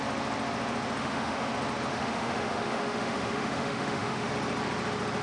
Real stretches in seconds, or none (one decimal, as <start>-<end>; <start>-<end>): 0.0-1.0; 1.5-1.9; 4.3-5.2